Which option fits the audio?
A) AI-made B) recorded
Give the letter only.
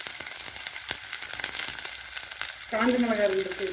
B